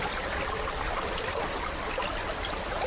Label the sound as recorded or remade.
recorded